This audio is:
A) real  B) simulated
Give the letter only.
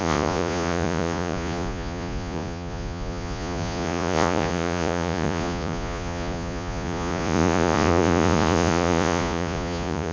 B